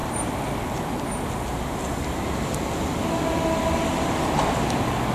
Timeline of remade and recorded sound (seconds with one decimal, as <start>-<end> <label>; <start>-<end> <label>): 0.0-5.1 recorded